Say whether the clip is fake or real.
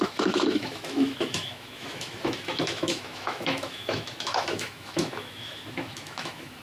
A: fake